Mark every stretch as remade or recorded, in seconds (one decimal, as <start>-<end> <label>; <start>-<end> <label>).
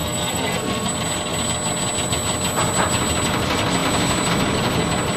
0.0-0.9 remade; 0.9-5.2 recorded